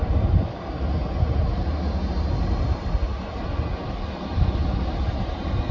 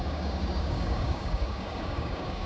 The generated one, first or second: second